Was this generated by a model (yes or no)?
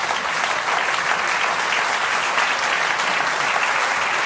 no